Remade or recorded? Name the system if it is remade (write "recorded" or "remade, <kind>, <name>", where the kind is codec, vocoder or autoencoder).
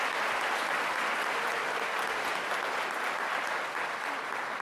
recorded